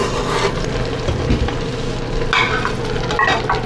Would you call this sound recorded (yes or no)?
yes